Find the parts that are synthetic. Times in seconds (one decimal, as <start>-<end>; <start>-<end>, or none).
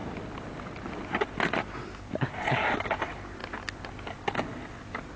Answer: none